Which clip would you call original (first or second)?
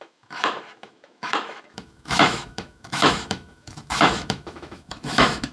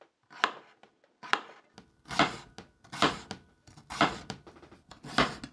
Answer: second